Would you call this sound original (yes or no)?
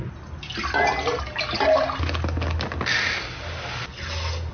yes